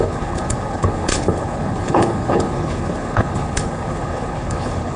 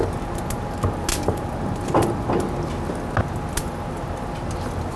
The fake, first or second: first